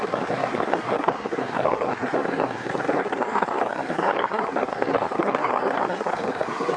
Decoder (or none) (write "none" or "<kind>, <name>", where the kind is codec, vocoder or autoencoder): codec, SNAC